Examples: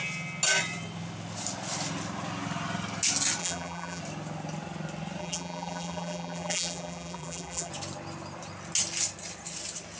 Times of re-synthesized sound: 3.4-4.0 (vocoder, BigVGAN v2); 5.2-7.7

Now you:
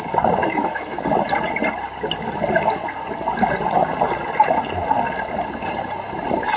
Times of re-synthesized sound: 0.4-1.0 (autoencoder, DAC-VAE)

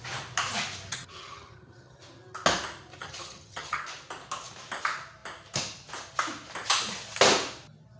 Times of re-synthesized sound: 0.9-2.0 (vocoder, HiFi-GAN); 3.0-3.8

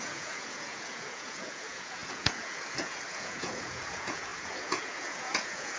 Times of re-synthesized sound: 0.0-5.8 (vocoder, Vocos)

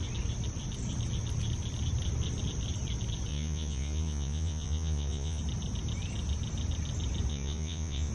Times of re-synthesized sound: 3.3-5.4 (vocoder, Vocos); 7.3-8.1

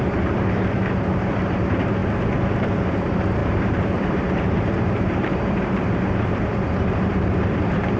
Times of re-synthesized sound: 0.0-2.0 (vocoder, BigVGAN v2); 2.9-8.0